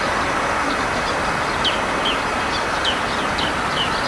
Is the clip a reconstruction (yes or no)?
no